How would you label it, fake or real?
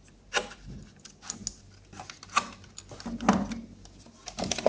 real